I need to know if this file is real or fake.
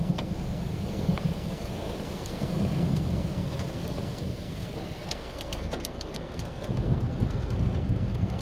fake